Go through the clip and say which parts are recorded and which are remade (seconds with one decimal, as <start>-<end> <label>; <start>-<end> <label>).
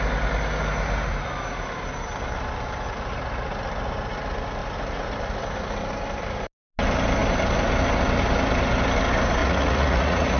0.0-9.4 recorded; 9.4-10.4 remade